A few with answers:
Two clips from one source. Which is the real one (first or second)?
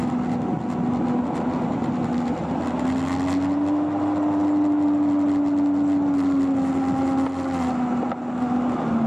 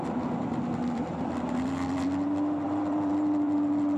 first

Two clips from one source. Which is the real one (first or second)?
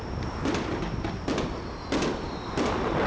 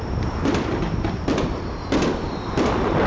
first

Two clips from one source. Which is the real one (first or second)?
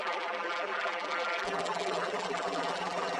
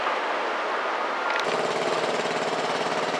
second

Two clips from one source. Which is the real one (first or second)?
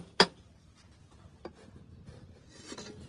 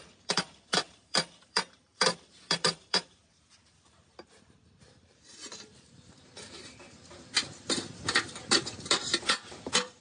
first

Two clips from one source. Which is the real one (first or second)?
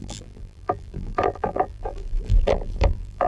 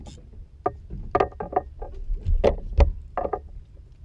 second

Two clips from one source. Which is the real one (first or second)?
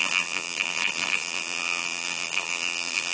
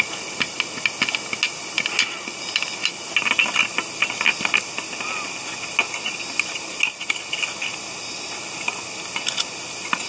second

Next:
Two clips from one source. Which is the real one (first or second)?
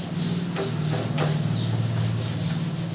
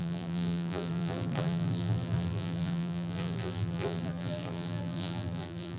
first